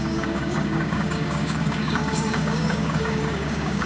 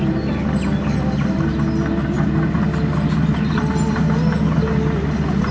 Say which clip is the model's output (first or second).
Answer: first